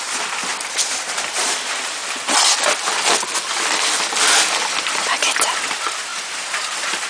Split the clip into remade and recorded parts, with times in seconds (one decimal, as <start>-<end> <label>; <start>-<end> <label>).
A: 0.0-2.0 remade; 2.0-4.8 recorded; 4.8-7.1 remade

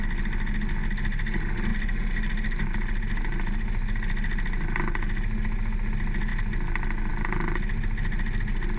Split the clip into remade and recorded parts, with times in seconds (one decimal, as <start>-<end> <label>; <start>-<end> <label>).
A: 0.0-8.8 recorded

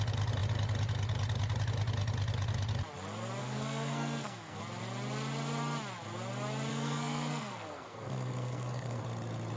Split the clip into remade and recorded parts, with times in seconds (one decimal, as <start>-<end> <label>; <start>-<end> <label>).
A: 0.0-3.4 recorded; 3.4-4.6 remade; 4.6-6.7 recorded; 6.7-9.0 remade; 9.0-9.6 recorded